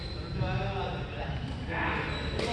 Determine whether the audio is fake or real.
real